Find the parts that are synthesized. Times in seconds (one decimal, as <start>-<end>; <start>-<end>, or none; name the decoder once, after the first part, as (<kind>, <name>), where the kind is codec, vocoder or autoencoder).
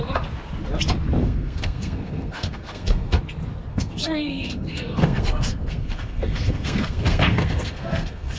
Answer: 1.2-3.2 (codec, SNAC); 3.7-8.4